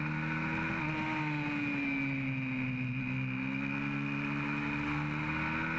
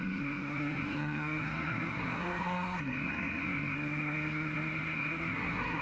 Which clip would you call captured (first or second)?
first